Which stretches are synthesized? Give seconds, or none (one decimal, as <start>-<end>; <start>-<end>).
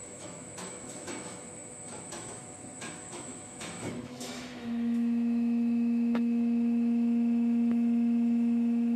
0.0-9.0